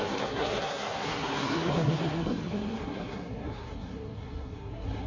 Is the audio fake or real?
fake